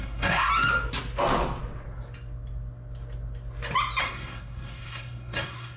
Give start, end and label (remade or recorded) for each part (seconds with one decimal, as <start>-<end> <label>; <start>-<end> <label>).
0.0-0.5 remade; 0.5-4.0 recorded; 4.0-5.8 remade

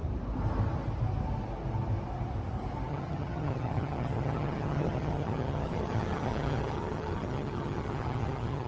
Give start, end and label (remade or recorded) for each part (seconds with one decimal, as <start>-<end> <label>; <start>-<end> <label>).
0.0-2.9 recorded; 2.9-8.7 remade

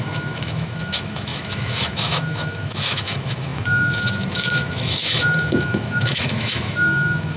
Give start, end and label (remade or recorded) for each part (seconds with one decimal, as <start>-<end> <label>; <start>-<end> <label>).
0.0-7.4 remade

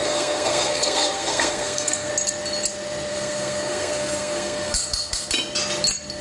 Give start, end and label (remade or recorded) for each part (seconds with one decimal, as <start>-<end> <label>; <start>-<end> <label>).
0.0-2.1 remade; 2.1-3.1 recorded; 3.1-5.3 remade; 5.3-6.2 recorded

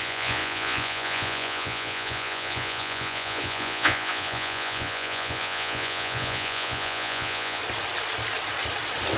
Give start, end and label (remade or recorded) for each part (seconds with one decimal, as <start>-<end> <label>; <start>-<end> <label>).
0.0-7.6 remade; 7.6-9.2 recorded

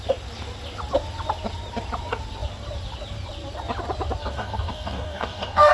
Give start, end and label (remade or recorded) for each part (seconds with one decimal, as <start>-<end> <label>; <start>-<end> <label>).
0.0-4.2 recorded; 4.2-5.7 remade

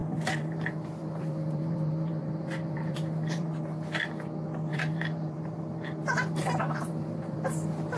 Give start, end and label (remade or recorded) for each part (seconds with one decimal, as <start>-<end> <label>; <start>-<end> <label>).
0.0-3.5 remade; 3.5-4.7 recorded; 4.7-7.4 remade; 7.4-8.0 recorded

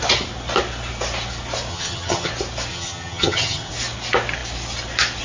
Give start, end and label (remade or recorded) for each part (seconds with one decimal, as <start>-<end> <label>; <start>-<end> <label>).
0.0-1.7 recorded; 1.7-2.3 remade; 2.3-2.7 recorded; 2.7-3.7 remade; 3.7-5.2 recorded